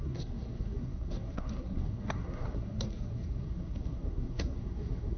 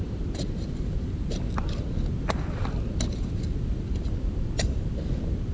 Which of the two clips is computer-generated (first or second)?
first